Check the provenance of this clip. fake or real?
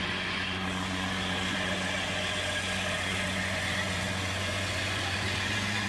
fake